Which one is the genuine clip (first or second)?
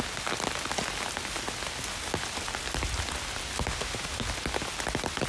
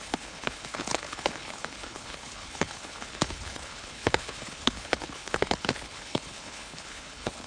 first